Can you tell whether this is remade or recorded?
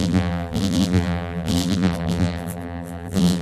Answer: remade